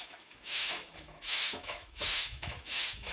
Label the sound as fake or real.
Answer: fake